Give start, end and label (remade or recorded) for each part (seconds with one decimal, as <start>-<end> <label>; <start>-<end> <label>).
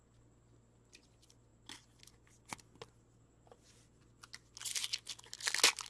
0.0-5.9 recorded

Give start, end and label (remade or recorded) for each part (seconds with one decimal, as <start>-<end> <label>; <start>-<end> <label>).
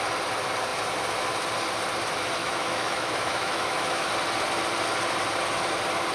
0.0-2.4 recorded; 2.4-4.1 remade; 4.1-6.1 recorded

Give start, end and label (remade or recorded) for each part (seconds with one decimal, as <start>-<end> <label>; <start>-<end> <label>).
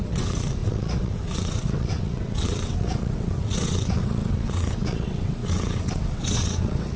0.0-7.0 remade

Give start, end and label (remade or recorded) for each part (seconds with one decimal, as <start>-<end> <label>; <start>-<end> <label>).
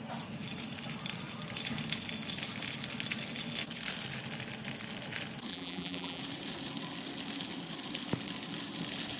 0.0-5.5 recorded; 5.5-6.2 remade; 6.2-9.2 recorded